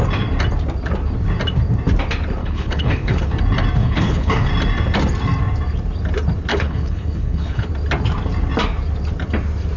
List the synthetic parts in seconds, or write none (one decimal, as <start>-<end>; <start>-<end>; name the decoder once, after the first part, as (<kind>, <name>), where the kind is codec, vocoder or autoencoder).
2.4-3.3 (codec, HILCodec); 3.8-4.5; 6.5-7.7